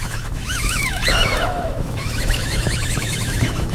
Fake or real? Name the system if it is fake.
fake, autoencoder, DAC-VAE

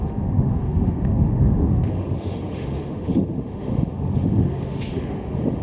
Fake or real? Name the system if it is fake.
fake, autoencoder, DAC-VAE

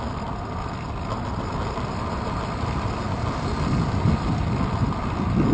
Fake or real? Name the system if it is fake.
real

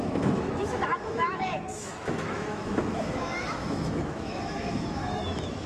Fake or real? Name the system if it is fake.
fake, autoencoder, DAC-VAE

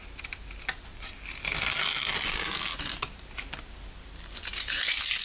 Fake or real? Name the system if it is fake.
real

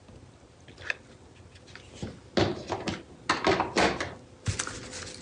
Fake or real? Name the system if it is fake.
real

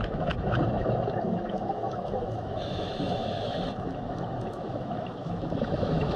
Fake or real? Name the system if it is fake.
fake, autoencoder, DAC-VAE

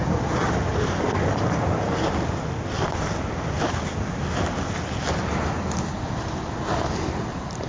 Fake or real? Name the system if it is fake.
real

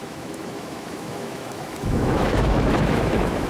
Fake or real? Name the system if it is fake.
fake, autoencoder, DAC-VAE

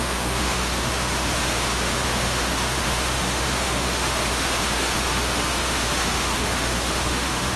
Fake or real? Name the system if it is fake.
fake, autoencoder, DAC-VAE